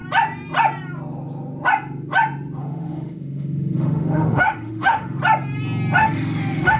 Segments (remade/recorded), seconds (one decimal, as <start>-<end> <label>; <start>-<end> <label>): 0.0-2.6 recorded; 2.6-5.2 remade; 5.2-6.0 recorded; 6.0-6.8 remade